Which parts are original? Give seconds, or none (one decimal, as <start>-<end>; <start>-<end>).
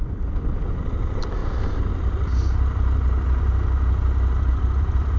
1.4-4.5